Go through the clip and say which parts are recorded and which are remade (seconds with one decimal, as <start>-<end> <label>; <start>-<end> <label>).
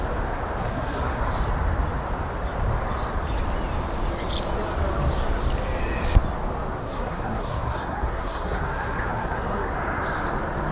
0.0-0.6 recorded; 0.6-1.2 remade; 1.2-6.8 recorded; 6.8-9.7 remade; 9.7-10.7 recorded